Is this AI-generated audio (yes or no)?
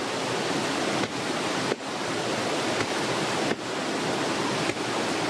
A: no